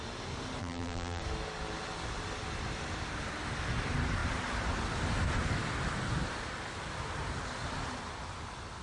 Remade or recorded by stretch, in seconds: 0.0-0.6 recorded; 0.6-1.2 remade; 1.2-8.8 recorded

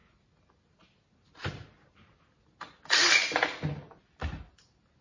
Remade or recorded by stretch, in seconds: 0.0-5.0 recorded